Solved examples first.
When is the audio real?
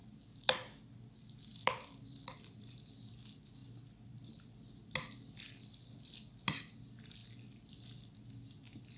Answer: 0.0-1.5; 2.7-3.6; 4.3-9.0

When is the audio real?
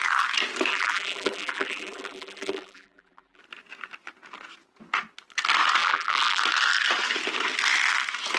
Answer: 0.0-0.7; 3.4-5.8; 6.4-8.4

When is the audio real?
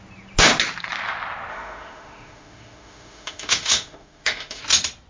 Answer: 0.0-1.5; 4.6-5.1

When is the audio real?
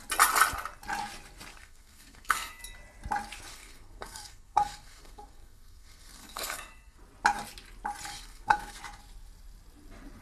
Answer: 0.0-1.5; 2.6-3.5; 7.0-8.1; 8.8-10.2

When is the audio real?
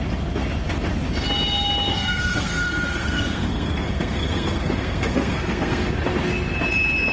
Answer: 0.0-1.9; 5.9-7.1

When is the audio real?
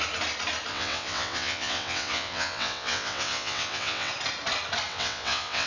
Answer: 0.0-0.7; 4.1-4.9